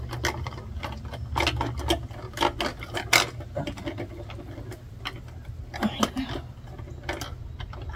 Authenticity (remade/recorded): recorded